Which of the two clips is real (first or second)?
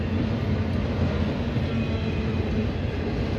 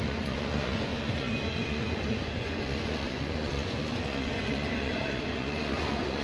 first